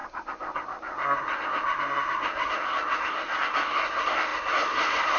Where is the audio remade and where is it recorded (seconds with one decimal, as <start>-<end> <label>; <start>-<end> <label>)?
0.0-5.2 remade